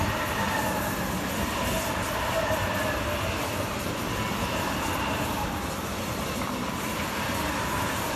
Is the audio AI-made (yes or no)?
yes